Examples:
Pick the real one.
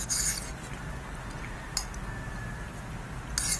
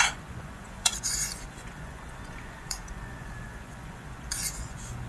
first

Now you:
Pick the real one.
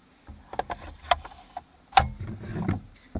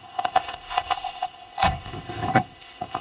first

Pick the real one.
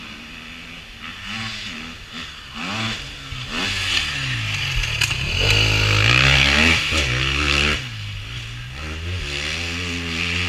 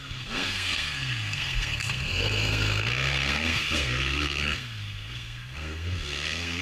first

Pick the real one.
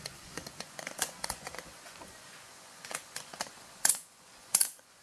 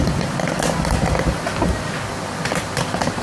second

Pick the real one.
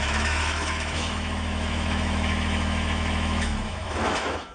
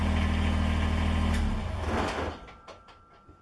second